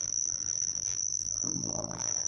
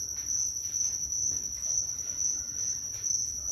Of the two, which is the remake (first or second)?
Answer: first